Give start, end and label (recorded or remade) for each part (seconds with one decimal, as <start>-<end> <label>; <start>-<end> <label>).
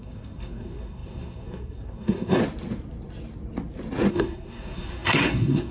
0.0-2.4 remade; 2.4-4.1 recorded; 4.1-5.7 remade